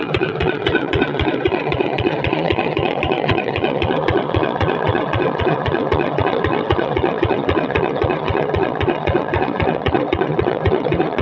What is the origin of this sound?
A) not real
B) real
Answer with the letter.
A